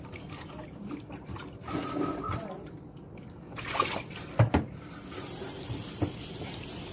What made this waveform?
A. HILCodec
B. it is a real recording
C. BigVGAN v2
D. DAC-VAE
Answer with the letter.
B